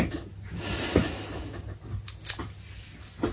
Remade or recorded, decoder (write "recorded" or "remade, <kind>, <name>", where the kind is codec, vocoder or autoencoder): recorded